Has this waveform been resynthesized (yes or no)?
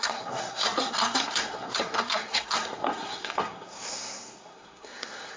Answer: yes